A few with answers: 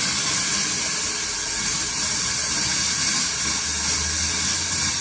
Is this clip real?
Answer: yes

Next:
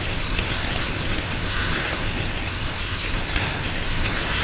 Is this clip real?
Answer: no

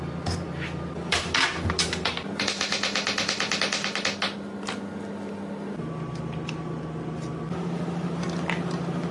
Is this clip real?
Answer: yes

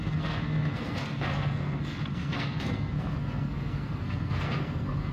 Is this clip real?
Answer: no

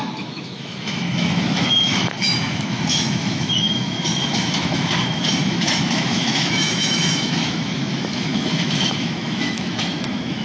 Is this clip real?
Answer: no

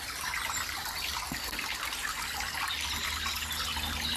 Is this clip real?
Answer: yes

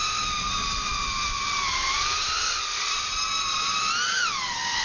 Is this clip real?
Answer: yes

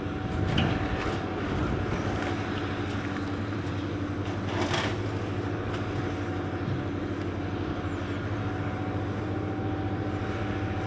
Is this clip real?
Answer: yes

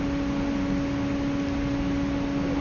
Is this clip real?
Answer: yes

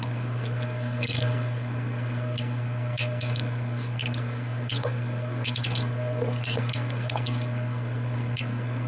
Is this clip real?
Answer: no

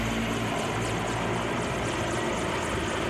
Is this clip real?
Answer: yes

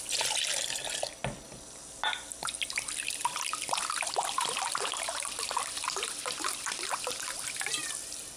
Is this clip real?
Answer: yes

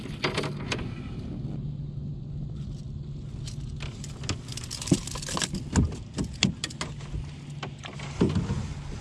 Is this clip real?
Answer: yes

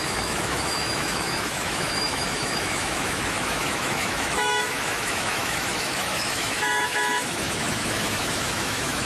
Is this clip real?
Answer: no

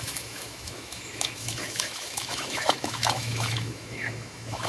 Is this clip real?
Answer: no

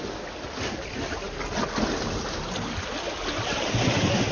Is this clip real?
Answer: yes